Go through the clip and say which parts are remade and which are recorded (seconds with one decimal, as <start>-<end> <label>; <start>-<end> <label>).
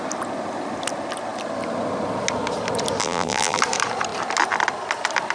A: 0.0-3.0 recorded; 3.0-3.6 remade; 3.6-5.3 recorded